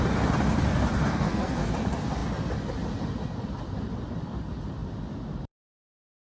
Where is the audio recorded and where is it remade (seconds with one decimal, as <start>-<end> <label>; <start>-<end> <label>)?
0.0-1.0 recorded; 1.0-1.7 remade; 1.7-6.2 recorded